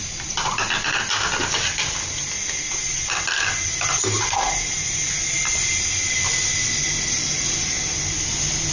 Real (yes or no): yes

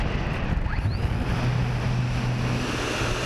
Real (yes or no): yes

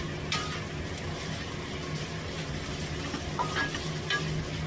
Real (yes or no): yes